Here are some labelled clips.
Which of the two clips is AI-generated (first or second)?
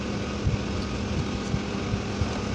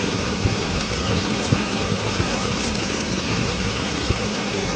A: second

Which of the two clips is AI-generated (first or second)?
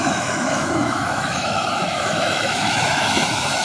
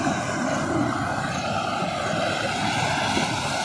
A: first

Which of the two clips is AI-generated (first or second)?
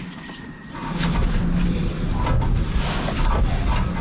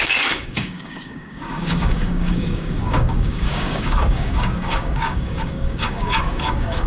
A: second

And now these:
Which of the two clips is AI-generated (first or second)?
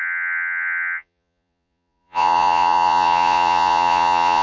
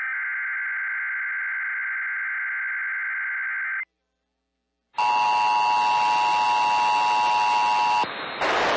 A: first